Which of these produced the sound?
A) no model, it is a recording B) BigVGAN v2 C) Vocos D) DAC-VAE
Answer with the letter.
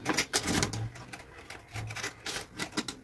A